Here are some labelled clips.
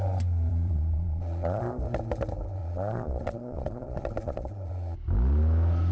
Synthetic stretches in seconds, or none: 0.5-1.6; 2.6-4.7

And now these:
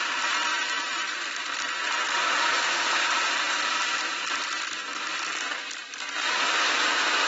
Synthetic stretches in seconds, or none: none